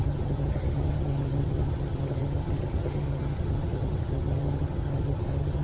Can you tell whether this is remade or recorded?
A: remade